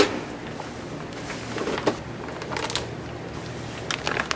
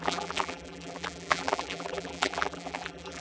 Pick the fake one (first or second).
second